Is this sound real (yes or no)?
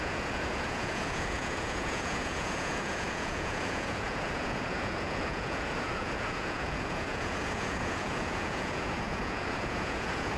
no